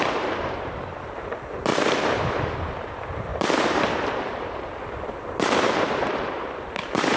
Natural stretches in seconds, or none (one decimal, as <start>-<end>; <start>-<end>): none